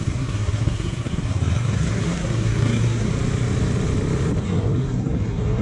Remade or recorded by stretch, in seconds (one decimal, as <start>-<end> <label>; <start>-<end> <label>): 0.0-3.1 remade; 3.1-4.4 recorded; 4.4-5.6 remade